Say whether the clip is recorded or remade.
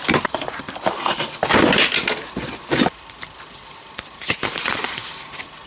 recorded